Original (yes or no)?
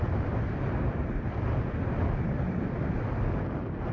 yes